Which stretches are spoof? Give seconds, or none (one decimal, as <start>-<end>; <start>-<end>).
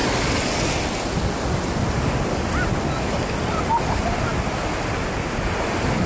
none